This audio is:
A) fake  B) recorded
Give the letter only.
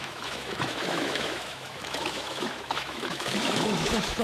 A